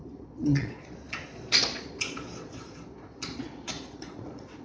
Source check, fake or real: fake